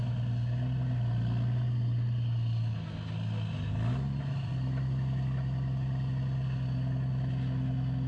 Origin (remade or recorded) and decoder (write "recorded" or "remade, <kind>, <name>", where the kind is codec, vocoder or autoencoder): recorded